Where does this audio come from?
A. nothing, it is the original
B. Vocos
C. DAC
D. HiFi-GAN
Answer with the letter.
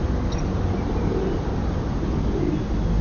A